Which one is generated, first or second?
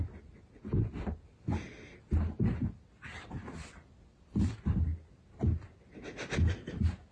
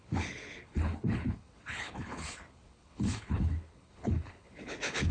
second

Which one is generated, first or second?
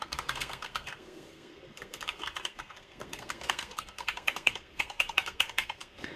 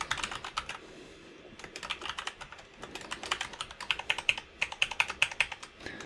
first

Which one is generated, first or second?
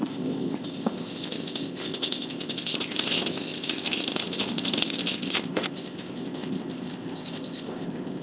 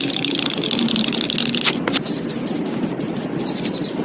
first